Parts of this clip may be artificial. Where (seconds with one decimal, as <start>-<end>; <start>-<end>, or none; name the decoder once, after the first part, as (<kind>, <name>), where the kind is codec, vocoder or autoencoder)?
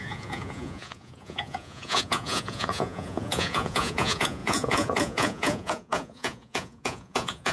0.0-7.5 (vocoder, Vocos)